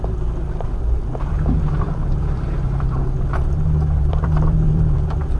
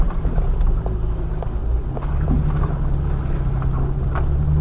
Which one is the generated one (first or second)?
first